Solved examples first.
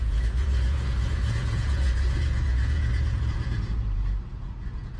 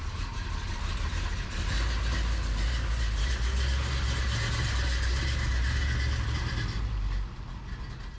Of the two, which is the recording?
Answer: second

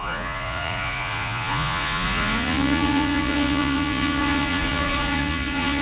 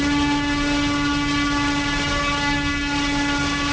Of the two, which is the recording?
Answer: second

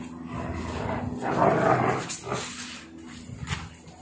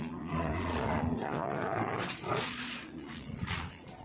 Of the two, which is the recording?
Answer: first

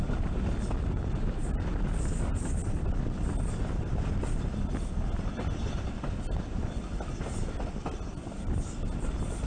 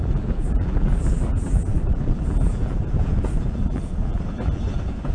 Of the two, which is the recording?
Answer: first